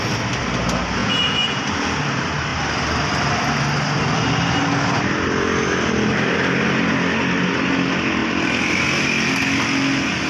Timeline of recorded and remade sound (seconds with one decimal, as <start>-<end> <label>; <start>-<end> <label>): 0.0-1.0 recorded; 1.0-1.6 remade; 1.6-10.3 recorded